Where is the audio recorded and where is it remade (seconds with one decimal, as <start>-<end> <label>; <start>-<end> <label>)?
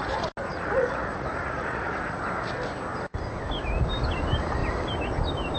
0.0-0.5 recorded; 0.5-2.2 remade; 2.2-5.6 recorded